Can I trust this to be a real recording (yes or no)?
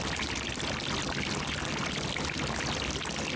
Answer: yes